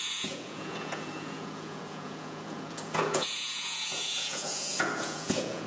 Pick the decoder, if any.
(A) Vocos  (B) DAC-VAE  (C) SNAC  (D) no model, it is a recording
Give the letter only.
A